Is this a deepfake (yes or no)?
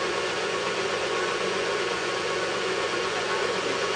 yes